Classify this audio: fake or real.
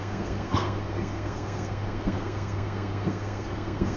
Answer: fake